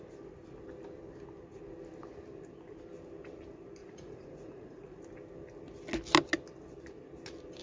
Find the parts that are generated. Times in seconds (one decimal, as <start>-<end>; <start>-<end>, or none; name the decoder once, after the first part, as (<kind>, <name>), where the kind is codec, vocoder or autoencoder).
3.8-5.0 (vocoder, Vocos)